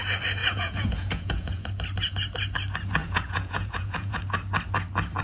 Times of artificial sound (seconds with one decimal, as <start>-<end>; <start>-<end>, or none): 0.4-1.7; 3.0-4.2